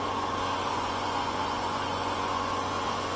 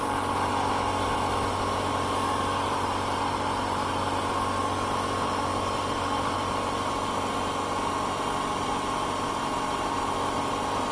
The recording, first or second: second